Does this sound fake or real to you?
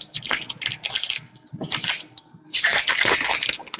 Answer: real